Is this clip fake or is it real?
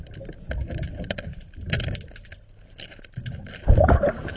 real